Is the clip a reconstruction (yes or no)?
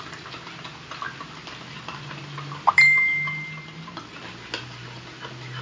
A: no